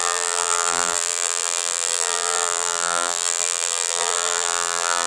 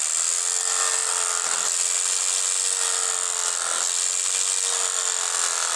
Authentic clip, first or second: second